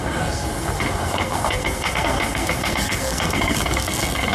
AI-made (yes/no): yes